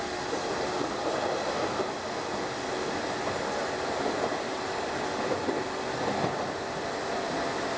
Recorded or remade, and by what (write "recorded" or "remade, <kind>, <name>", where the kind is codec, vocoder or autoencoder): recorded